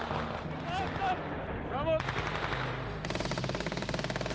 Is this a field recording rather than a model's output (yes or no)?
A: yes